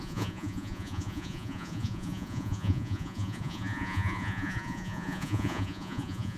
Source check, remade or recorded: remade